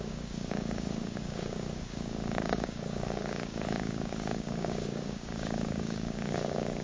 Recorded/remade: remade